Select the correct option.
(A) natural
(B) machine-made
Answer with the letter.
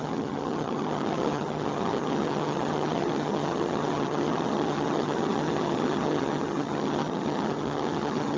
B